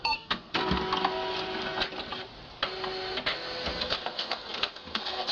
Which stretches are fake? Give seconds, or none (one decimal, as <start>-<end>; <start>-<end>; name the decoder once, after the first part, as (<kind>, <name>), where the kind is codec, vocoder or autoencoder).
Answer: 0.0-0.6 (codec, SNAC); 3.8-5.3